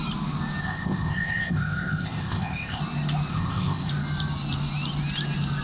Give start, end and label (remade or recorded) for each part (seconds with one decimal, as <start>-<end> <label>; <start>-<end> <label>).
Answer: 0.0-0.6 recorded; 0.6-2.8 remade; 2.8-3.3 recorded; 3.3-3.9 remade; 3.9-5.6 recorded